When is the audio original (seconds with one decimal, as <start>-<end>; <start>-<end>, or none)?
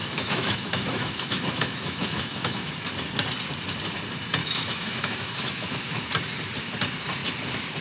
2.7-4.4; 6.1-7.8